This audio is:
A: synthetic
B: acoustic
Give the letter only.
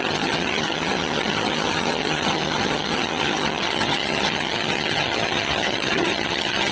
A